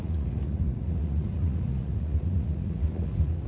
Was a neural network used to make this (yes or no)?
yes